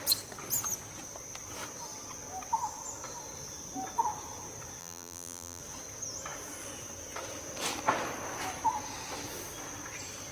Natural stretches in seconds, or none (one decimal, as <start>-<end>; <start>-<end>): 0.0-4.8; 5.6-10.3